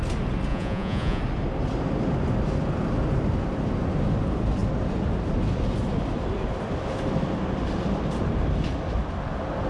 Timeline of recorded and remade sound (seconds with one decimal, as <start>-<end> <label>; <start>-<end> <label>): 0.0-0.5 recorded; 0.5-1.2 remade; 1.2-9.7 recorded